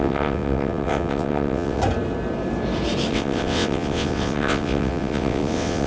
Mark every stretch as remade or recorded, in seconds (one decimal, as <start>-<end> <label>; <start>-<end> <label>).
0.0-1.8 remade; 1.8-3.1 recorded; 3.1-5.9 remade